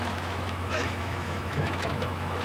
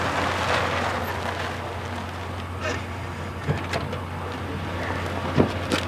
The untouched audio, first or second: second